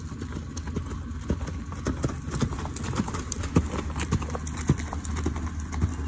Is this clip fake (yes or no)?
no